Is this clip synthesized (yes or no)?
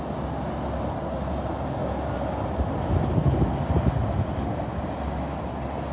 no